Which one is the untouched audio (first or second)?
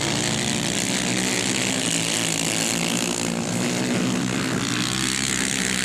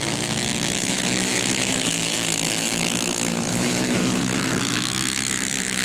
first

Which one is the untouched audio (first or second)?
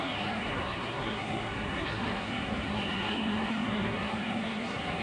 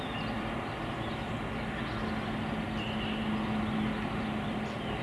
second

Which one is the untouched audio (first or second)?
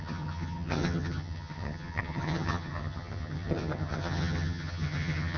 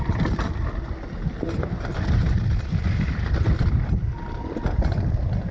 second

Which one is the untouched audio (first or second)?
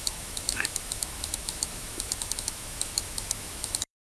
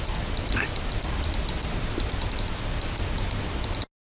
second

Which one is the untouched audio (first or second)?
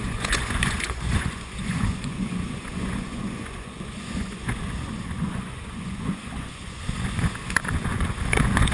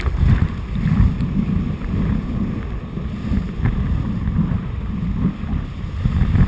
second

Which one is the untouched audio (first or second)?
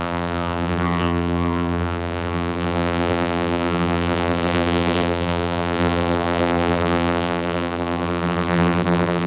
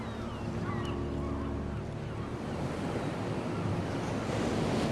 second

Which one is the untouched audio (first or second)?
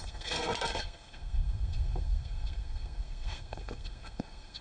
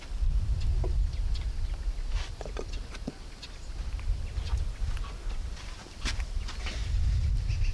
second